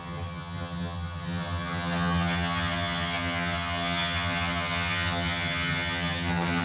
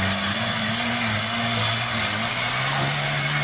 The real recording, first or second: second